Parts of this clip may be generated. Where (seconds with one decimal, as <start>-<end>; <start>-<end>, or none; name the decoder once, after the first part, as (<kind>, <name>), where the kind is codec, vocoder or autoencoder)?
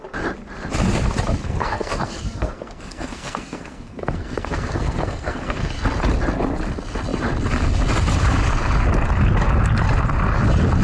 1.4-5.7 (codec, SNAC)